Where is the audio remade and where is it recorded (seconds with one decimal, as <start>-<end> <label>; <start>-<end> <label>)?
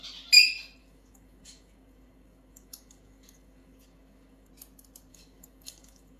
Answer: 0.0-0.8 recorded; 0.8-4.5 remade; 4.5-5.1 recorded; 5.1-6.2 remade